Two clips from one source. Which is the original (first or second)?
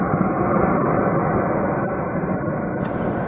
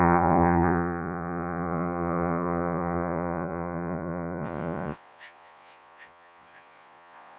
first